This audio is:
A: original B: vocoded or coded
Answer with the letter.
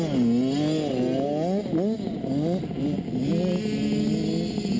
A